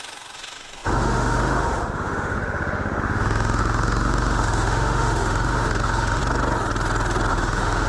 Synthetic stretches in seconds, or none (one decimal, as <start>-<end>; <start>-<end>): 0.0-6.2; 7.3-7.9

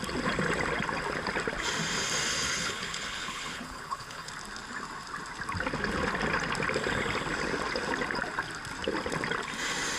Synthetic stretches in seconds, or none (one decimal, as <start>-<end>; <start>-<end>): 2.3-4.3

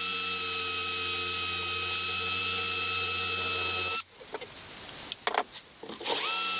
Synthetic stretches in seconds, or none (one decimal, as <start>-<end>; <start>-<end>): none

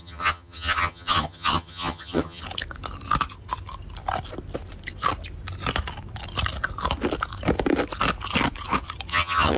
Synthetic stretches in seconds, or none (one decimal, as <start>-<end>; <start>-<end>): 0.0-2.4; 9.1-9.6

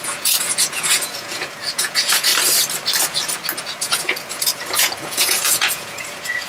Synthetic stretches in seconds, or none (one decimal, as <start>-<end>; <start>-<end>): 0.0-2.3; 3.6-6.5

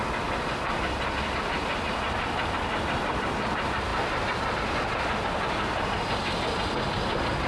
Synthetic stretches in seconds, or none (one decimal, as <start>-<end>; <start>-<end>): none